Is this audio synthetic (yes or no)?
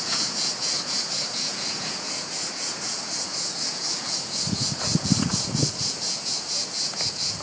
yes